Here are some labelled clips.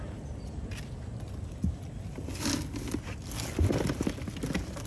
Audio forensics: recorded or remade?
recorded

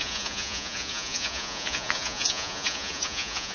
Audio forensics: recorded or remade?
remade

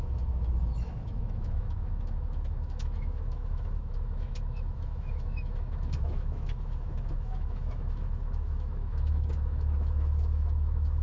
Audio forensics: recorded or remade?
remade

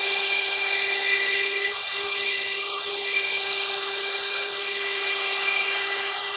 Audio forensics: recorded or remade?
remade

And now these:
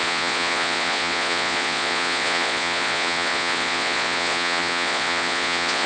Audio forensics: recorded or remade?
remade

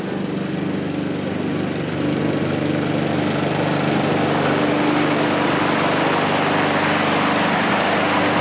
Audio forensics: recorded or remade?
recorded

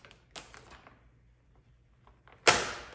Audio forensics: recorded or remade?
recorded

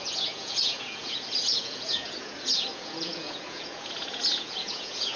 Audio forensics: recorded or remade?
remade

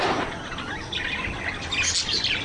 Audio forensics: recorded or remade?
recorded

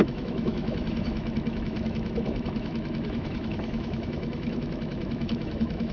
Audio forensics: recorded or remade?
remade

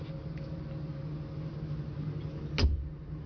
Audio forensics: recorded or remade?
recorded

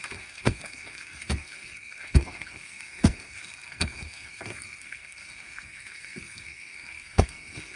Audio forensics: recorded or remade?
remade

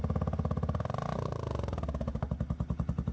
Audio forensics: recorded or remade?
recorded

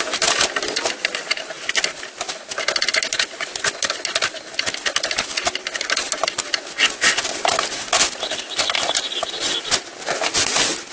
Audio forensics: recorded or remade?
recorded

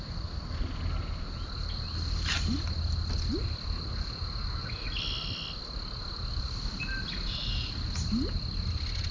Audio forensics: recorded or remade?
recorded